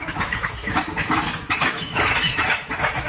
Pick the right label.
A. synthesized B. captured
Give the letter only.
A